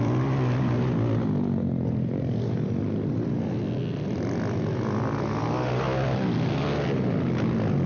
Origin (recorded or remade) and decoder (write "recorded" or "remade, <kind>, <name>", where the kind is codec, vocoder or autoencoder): recorded